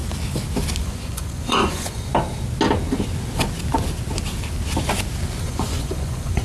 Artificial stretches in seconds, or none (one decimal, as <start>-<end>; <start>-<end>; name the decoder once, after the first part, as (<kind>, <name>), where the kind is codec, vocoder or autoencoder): 0.8-2.1 (vocoder, Vocos); 5.4-6.4